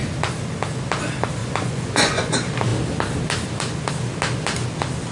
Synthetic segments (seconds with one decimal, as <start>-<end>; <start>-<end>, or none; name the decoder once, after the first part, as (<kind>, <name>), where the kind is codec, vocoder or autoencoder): 1.4-2.3 (vocoder, Vocos)